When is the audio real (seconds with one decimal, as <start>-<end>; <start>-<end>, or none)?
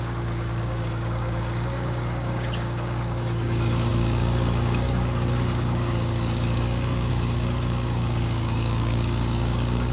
none